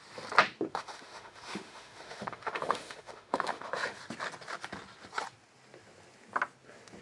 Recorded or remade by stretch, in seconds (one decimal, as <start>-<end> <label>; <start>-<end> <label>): 0.0-0.7 recorded; 0.7-4.0 remade; 4.0-7.0 recorded